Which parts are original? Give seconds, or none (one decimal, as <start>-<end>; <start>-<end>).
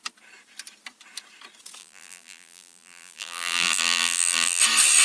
0.0-1.8; 4.6-5.0